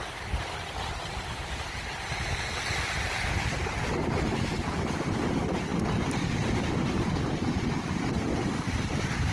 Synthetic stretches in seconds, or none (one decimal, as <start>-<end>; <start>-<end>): none